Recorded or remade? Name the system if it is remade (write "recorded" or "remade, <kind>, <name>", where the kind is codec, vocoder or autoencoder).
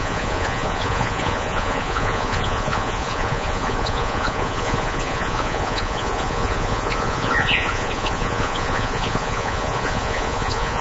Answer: remade, vocoder, Vocos